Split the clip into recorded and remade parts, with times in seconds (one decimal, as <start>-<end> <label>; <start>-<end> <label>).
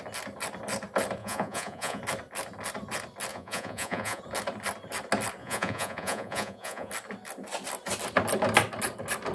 0.0-1.2 recorded; 1.2-2.0 remade; 2.0-3.3 recorded; 3.3-4.2 remade; 4.2-5.4 recorded; 5.4-6.9 remade; 6.9-9.3 recorded